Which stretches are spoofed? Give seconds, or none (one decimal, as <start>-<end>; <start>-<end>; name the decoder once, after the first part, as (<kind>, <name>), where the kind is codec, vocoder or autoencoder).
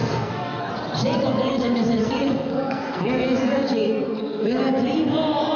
0.0-0.7 (codec, SNAC); 1.5-4.6